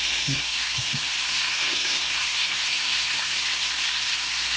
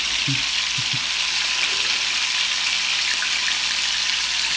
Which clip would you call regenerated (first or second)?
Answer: first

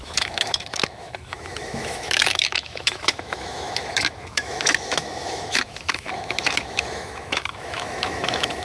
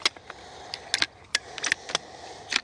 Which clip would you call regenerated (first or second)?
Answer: first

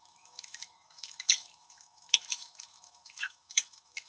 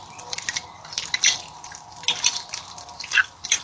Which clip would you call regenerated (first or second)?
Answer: first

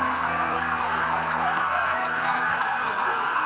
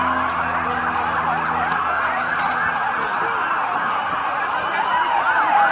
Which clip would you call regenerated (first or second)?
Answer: first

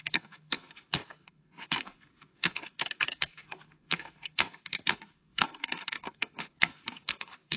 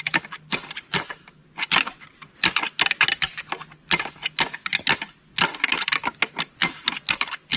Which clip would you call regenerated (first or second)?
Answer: first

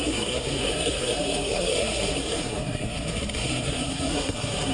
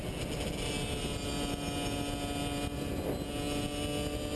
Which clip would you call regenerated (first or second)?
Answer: first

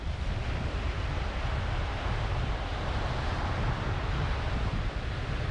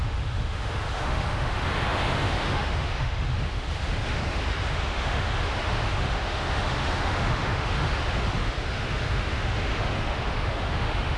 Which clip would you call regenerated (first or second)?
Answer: second